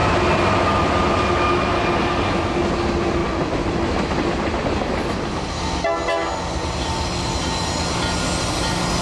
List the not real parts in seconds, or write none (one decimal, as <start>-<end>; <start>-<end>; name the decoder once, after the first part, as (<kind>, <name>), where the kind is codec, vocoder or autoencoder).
none

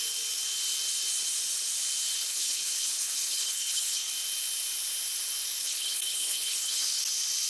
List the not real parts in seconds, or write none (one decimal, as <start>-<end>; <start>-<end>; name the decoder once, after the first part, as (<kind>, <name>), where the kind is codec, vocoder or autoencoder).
2.2-4.1 (codec, HILCodec); 5.6-7.0